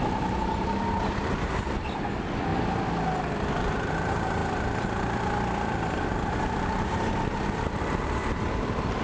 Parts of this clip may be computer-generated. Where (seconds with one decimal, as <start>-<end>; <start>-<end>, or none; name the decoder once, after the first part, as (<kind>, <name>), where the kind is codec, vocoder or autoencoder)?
none